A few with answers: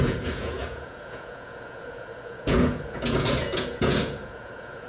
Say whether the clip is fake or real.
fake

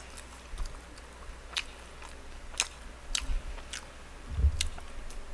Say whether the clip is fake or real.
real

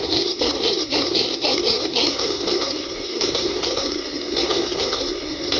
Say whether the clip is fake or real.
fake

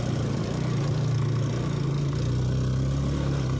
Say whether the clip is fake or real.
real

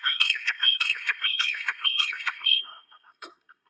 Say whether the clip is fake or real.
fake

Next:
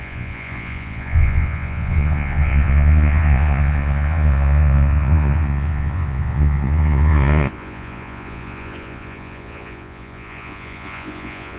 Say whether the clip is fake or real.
fake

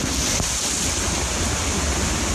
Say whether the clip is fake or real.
real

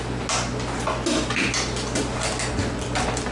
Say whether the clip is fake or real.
real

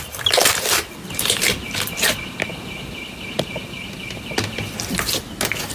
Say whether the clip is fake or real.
real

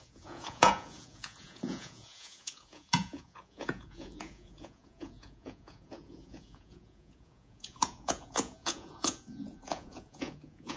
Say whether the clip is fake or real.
fake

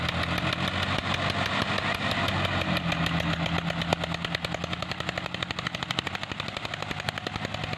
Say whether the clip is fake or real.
real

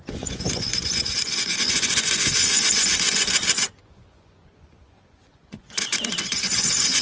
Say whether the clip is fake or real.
fake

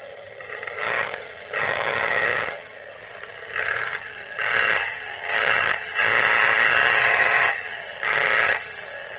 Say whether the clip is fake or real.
fake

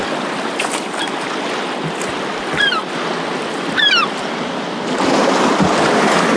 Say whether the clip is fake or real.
real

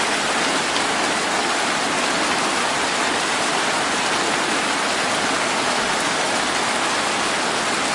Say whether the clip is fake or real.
real